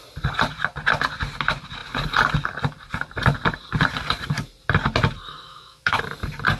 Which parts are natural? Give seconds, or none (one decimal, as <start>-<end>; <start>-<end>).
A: 0.0-5.5; 6.0-6.6